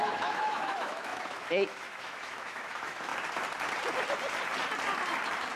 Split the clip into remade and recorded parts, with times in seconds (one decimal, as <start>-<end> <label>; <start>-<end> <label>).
0.0-3.1 remade; 3.1-5.6 recorded